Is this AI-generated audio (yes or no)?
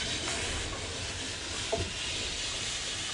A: no